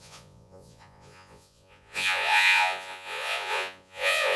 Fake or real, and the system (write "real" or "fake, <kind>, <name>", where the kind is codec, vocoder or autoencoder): fake, vocoder, Vocos